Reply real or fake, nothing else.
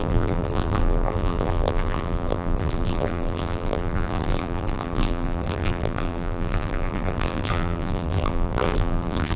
fake